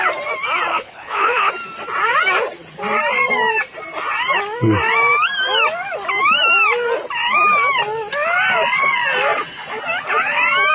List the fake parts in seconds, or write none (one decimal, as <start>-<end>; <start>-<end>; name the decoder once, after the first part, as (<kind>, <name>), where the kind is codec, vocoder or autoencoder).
0.7-1.5 (codec, HILCodec)